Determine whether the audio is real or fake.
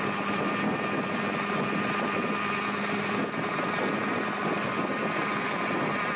real